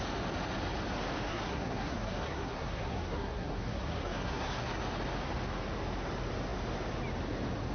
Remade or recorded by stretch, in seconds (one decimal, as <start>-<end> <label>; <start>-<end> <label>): 0.0-1.3 recorded; 1.3-4.8 remade; 4.8-7.7 recorded